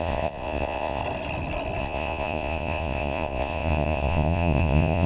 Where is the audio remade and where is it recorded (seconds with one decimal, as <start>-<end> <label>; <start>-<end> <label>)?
0.0-1.0 remade; 1.0-1.8 recorded; 1.8-5.1 remade